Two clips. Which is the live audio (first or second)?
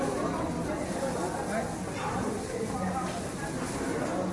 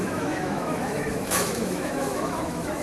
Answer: first